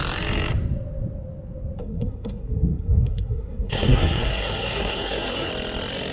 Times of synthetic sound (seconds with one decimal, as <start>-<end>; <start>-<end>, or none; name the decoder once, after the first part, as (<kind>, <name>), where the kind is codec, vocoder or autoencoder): 1.8-5.5 (codec, SNAC)